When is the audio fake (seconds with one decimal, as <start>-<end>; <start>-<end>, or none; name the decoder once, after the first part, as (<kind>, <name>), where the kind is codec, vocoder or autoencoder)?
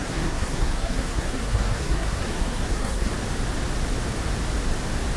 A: 0.0-3.1 (codec, SNAC)